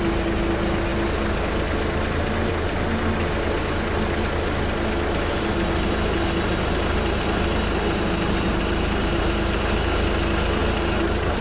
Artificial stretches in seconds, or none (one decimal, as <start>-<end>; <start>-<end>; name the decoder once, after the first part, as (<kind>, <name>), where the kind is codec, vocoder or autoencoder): 8.5-9.2 (vocoder, BigVGAN v2)